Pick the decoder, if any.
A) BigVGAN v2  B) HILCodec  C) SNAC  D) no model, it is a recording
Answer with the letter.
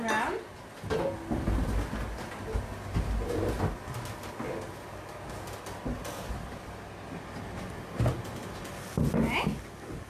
D